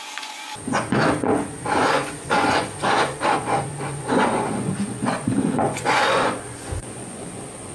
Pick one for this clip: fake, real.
fake